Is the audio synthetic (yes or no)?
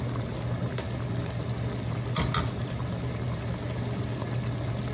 no